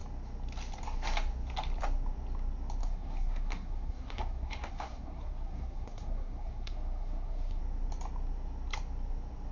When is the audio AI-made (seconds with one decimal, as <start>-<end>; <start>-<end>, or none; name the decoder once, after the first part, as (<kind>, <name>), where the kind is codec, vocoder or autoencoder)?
2.8-7.6 (codec, SNAC)